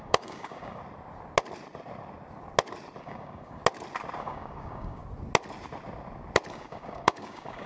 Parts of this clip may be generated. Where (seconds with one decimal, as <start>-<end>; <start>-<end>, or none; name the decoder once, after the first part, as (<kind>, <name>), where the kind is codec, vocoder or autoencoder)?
0.0-0.8 (codec, DAC); 3.0-3.6; 4.2-5.0; 6.5-7.7

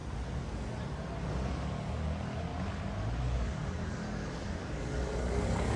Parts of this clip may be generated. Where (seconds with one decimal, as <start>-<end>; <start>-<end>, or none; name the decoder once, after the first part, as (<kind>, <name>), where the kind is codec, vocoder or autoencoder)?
1.5-2.5 (codec, DAC); 3.2-5.8

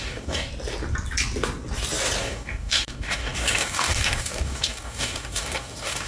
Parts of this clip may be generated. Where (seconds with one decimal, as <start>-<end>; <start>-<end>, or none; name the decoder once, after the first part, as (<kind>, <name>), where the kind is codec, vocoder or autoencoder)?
0.0-0.5 (codec, DAC); 2.2-6.1